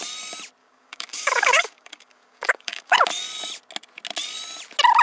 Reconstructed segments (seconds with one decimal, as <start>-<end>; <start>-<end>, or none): 0.6-3.0